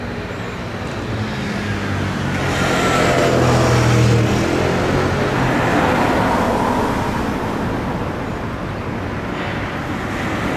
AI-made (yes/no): no